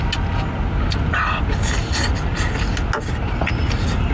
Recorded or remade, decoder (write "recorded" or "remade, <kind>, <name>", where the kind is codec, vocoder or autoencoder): recorded